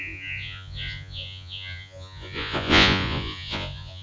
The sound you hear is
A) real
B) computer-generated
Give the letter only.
B